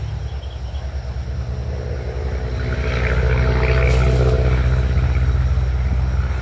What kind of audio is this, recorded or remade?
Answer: recorded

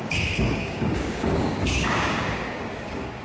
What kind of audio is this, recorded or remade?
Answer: remade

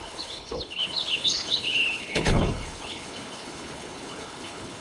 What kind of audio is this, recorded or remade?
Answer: remade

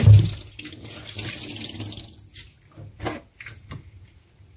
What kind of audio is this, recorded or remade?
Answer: recorded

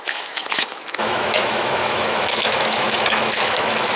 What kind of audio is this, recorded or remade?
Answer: remade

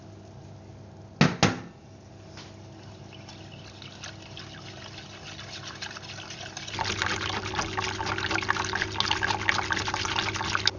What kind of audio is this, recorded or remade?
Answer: recorded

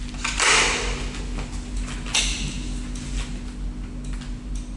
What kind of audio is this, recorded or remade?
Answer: recorded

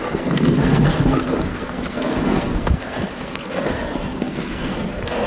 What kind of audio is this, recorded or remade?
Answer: remade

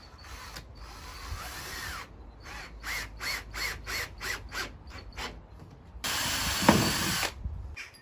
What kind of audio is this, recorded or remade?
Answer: recorded